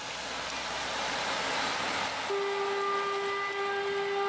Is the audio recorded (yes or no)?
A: yes